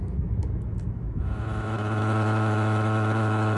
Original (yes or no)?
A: no